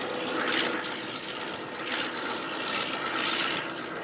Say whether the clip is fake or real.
real